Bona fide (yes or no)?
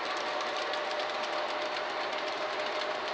yes